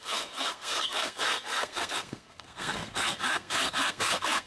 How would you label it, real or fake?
fake